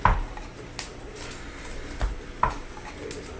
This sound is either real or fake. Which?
real